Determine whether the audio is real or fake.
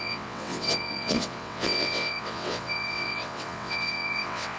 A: fake